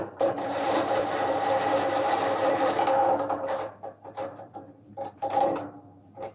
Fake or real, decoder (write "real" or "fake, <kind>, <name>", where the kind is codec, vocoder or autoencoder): fake, vocoder, BigVGAN v2